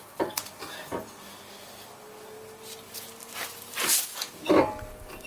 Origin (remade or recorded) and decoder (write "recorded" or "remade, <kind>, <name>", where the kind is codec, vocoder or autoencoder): recorded